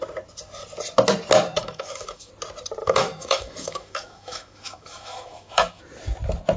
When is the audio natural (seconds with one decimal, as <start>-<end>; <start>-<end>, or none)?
0.0-1.6; 2.3-2.8; 5.8-6.6